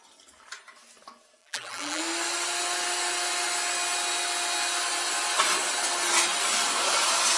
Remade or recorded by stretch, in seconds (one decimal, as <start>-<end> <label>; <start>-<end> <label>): 0.0-1.4 recorded; 1.4-2.0 remade; 2.0-7.4 recorded